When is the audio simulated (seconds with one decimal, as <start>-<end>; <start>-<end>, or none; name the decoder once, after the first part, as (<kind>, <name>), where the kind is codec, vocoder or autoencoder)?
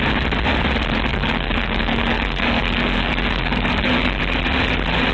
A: 1.1-4.2 (codec, DAC)